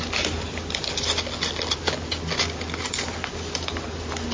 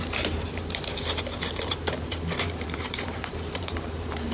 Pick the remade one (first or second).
second